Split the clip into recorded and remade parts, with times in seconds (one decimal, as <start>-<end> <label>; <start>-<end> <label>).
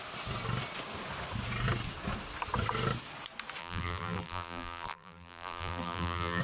0.0-3.6 recorded; 3.6-6.4 remade